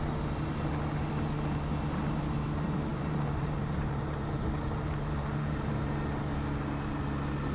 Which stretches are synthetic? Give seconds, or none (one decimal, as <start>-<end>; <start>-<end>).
2.9-5.8